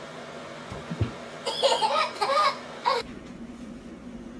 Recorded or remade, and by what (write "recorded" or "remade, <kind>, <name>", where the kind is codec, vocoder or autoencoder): remade, vocoder, Vocos